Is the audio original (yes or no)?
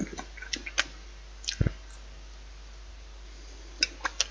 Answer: yes